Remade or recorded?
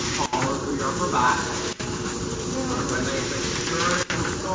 remade